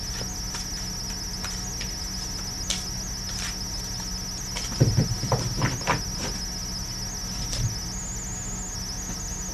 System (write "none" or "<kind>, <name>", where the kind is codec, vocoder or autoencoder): none